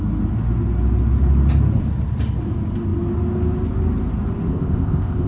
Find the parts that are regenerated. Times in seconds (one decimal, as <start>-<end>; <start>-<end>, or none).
4.5-5.3